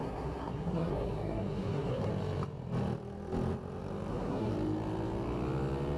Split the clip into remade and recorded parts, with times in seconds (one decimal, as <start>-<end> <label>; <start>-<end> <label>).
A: 0.0-2.1 remade; 2.1-4.1 recorded; 4.1-4.5 remade; 4.5-6.0 recorded